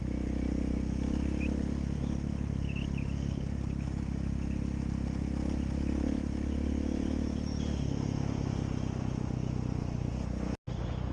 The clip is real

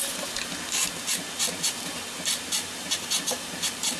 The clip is real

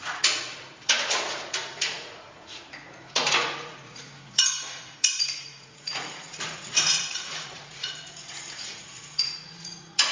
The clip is fake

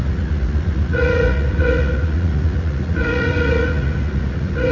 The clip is fake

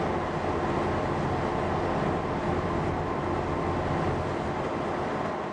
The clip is real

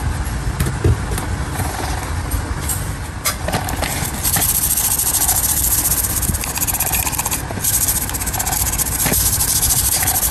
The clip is real